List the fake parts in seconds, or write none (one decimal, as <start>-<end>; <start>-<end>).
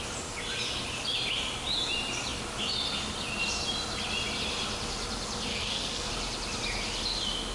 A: 5.5-6.1